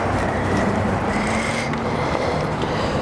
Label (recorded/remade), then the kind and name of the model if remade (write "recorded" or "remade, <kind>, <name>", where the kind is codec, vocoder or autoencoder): remade, vocoder, BigVGAN v2